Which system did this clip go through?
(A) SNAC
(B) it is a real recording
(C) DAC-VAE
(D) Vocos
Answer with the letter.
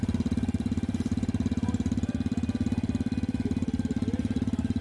B